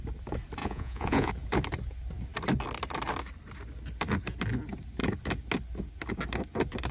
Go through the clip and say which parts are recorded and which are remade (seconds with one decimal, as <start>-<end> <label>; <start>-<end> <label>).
0.0-0.6 recorded; 0.6-1.3 remade; 1.3-6.9 recorded